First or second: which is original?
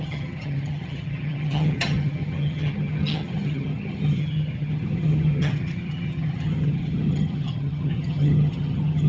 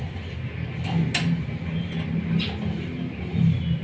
second